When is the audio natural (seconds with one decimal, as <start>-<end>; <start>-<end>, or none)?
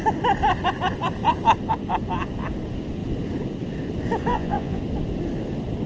0.0-4.3; 4.8-5.9